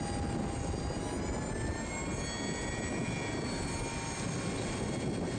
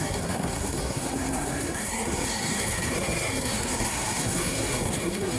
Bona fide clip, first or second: first